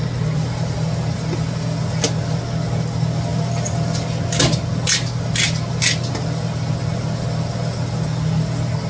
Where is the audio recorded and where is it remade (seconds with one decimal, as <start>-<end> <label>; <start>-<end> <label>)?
0.0-8.9 recorded